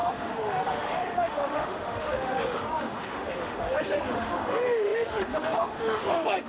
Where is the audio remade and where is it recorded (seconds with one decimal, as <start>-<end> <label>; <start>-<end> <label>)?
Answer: 0.0-6.5 remade

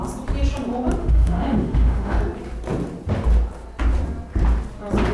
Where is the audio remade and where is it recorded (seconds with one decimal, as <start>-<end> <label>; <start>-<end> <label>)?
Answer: 0.0-1.0 recorded; 1.0-2.2 remade; 2.2-5.1 recorded

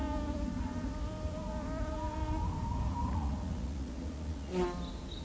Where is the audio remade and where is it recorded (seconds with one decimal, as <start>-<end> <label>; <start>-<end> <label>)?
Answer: 0.0-3.1 recorded; 3.1-4.5 remade; 4.5-5.2 recorded

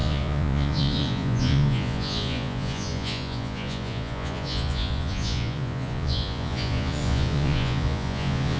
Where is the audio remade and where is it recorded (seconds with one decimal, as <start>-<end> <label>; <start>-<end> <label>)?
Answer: 0.0-8.6 remade